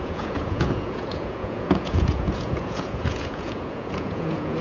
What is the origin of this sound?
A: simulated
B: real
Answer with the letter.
A